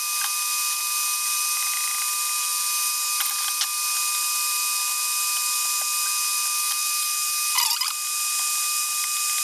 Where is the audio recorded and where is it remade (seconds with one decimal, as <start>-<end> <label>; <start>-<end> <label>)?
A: 0.0-9.4 recorded